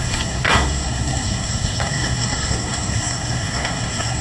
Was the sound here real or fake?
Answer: fake